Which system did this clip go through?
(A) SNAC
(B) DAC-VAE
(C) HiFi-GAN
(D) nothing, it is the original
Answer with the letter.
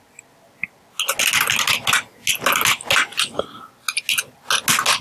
D